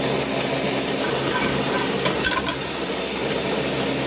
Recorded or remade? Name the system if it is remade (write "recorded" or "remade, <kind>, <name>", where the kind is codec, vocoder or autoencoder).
recorded